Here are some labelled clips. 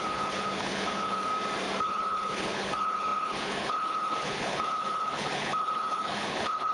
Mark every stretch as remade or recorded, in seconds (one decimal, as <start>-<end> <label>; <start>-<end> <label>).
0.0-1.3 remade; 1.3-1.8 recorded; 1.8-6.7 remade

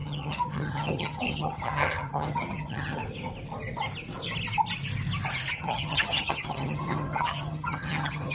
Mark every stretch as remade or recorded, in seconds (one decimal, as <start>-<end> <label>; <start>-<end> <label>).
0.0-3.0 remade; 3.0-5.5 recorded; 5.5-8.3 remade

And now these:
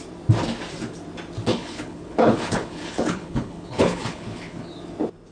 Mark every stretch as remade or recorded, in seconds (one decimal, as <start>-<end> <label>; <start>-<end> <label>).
0.0-1.5 recorded; 1.5-4.7 remade; 4.7-5.3 recorded